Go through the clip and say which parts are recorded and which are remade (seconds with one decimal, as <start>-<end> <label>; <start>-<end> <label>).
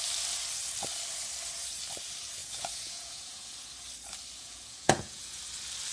0.0-2.4 recorded; 2.4-3.7 remade; 3.7-4.4 recorded; 4.4-5.4 remade; 5.4-5.9 recorded